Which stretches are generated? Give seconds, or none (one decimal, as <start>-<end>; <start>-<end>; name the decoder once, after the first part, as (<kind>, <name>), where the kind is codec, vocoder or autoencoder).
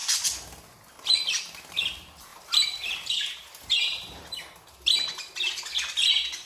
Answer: 2.3-4.4 (vocoder, BigVGAN v2)